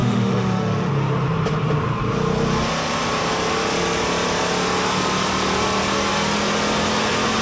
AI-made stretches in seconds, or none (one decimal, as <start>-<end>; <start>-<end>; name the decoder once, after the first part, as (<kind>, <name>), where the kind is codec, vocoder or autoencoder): 0.0-0.9 (autoencoder, DAC-VAE)